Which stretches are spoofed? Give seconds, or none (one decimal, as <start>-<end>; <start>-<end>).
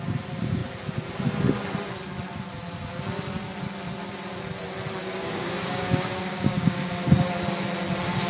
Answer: 5.0-6.9